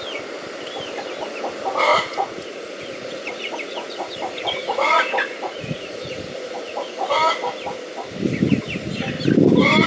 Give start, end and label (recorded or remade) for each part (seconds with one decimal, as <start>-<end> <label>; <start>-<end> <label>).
0.0-1.9 recorded; 1.9-7.1 remade; 7.1-9.9 recorded